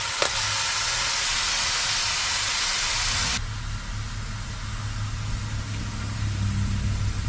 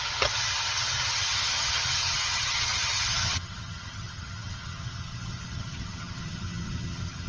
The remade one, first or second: second